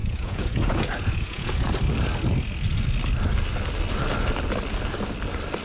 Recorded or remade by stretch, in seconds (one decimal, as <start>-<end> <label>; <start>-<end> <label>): 0.0-1.7 remade; 1.7-5.6 recorded